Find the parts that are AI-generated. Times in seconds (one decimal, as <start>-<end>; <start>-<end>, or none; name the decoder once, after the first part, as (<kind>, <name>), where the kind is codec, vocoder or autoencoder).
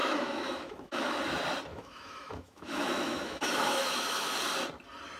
0.0-1.2 (autoencoder, DAC-VAE); 1.7-4.4